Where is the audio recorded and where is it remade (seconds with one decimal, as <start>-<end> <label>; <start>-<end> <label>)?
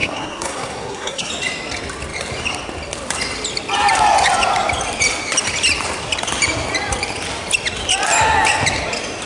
0.0-1.3 remade; 1.3-9.2 recorded